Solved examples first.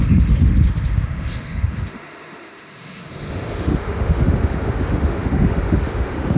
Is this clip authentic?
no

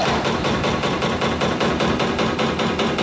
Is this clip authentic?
yes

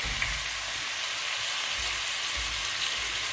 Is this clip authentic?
yes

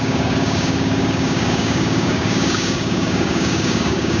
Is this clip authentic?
no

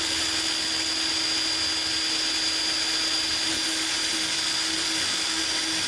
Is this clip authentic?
yes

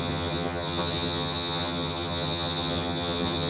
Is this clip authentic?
no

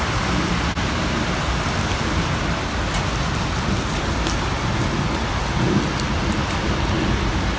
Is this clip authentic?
yes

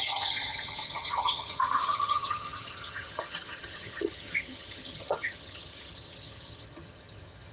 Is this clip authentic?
no